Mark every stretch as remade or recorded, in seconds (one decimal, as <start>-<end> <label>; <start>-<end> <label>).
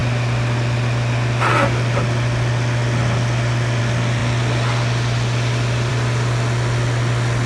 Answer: 0.0-7.5 recorded